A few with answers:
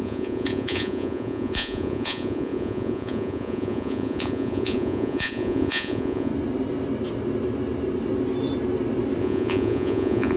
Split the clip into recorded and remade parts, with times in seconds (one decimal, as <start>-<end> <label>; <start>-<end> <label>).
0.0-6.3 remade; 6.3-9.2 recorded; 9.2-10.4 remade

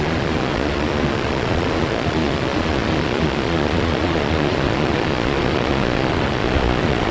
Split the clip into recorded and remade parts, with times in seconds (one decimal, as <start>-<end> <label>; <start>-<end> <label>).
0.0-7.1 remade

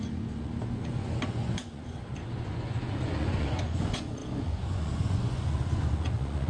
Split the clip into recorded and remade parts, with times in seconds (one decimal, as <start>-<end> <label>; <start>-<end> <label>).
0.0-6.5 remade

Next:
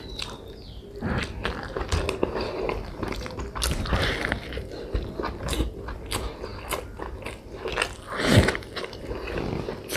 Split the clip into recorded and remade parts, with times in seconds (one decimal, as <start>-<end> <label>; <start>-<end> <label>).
0.0-10.0 recorded

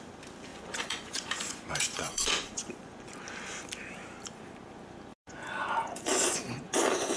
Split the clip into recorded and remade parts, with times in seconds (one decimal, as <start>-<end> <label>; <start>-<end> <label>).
0.0-0.5 recorded; 0.5-3.1 remade; 3.1-5.1 recorded; 5.1-7.2 remade